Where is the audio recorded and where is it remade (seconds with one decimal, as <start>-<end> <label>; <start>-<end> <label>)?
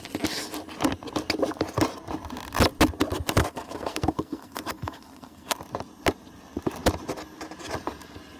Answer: 0.0-3.4 recorded; 3.4-5.6 remade; 5.6-8.4 recorded